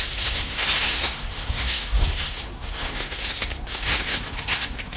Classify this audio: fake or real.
fake